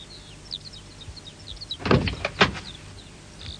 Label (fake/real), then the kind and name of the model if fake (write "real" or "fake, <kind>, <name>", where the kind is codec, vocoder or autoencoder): real